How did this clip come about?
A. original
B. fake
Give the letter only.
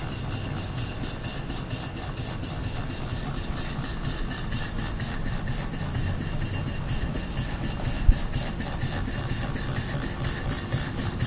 A